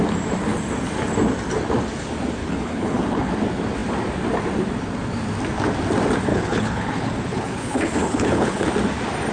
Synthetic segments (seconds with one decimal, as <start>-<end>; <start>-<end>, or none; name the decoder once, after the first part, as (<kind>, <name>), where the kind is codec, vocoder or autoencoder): 2.4-3.3 (codec, HILCodec); 6.3-8.7